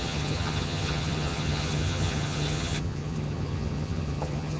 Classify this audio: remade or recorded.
remade